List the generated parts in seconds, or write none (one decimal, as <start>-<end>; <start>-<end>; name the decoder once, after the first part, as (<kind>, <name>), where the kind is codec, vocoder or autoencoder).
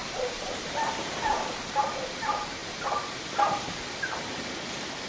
0.0-1.3 (vocoder, BigVGAN v2)